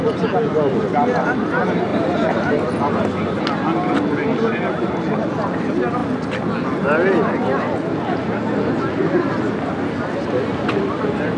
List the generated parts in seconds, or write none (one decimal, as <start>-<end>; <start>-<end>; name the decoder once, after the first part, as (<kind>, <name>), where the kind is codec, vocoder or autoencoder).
1.9-2.9 (vocoder, BigVGAN v2); 4.5-5.3

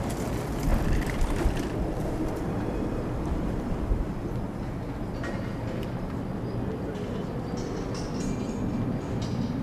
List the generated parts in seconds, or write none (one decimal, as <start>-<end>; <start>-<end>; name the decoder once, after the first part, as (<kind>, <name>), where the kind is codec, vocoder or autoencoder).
0.7-4.1 (vocoder, BigVGAN v2)

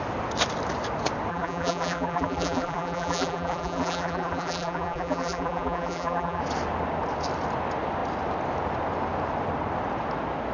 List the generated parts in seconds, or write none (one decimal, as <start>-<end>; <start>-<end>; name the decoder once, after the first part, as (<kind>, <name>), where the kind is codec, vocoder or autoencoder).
1.3-6.4 (vocoder, BigVGAN v2)